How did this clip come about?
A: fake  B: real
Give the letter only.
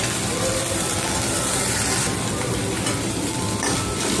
A